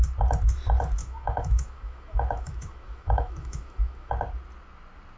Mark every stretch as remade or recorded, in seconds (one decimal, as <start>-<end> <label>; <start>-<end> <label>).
0.0-1.0 recorded; 1.0-4.1 remade; 4.1-5.2 recorded